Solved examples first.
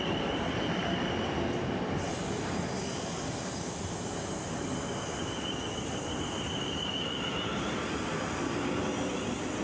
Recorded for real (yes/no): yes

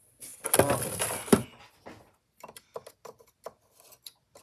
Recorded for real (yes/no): yes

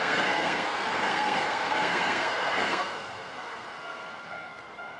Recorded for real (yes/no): no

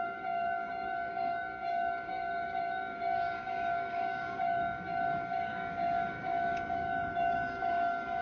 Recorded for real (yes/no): no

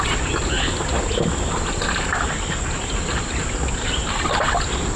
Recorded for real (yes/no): yes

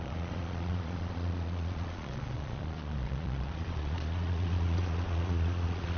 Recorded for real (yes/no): no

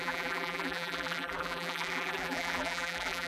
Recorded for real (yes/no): no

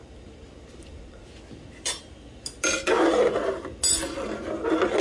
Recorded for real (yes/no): yes